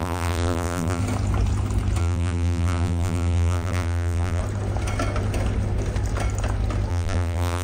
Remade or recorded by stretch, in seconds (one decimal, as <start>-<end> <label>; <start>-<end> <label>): 0.0-1.0 remade; 1.0-2.0 recorded; 2.0-4.4 remade; 4.4-6.9 recorded; 6.9-7.6 remade